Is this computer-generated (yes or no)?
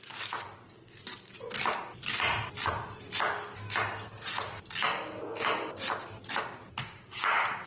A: no